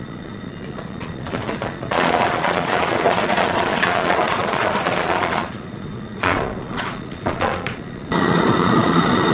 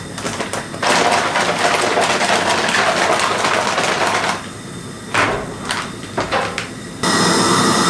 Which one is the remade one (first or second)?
first